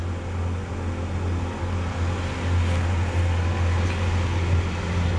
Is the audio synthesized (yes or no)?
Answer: no